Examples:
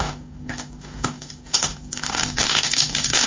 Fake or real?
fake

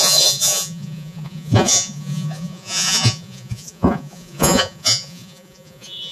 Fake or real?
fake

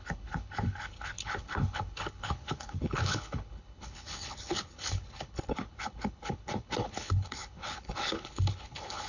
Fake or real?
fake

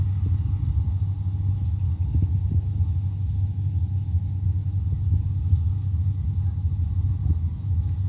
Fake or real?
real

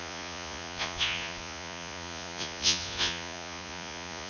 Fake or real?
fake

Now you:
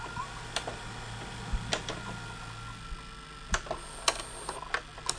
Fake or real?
real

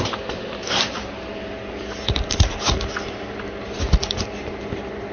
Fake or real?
real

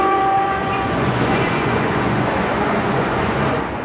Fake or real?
fake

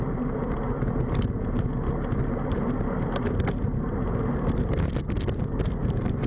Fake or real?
real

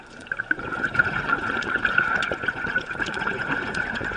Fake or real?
fake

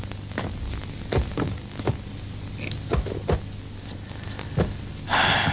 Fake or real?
real